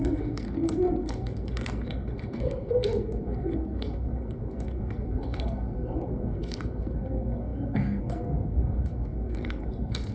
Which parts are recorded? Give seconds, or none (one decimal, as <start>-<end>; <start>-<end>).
none